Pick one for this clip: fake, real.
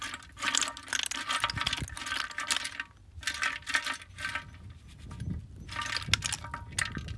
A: real